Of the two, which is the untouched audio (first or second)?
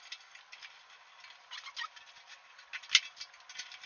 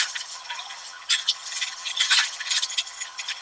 first